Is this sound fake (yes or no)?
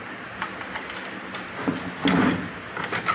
no